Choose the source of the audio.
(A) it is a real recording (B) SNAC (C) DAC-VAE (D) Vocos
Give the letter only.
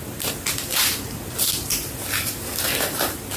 A